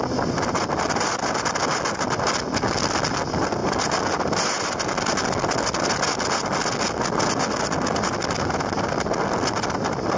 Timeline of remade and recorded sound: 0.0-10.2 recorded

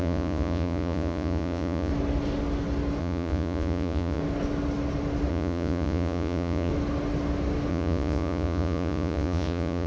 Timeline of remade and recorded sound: 0.0-1.9 remade; 1.9-3.0 recorded; 3.0-4.2 remade; 4.2-5.3 recorded; 5.3-6.7 remade; 6.7-7.7 recorded; 7.7-9.9 remade

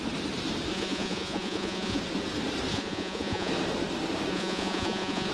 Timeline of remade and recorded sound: 0.0-0.7 recorded; 0.7-2.0 remade; 2.0-2.7 recorded; 2.7-3.5 remade; 3.5-4.3 recorded; 4.3-5.3 remade